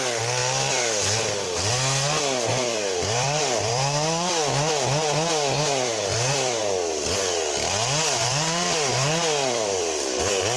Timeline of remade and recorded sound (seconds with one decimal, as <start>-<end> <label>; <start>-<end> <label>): 0.0-2.5 recorded; 2.5-6.6 remade; 6.6-8.2 recorded; 8.2-10.2 remade; 10.2-10.6 recorded